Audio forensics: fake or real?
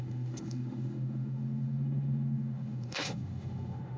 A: fake